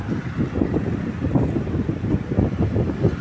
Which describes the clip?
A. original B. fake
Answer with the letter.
A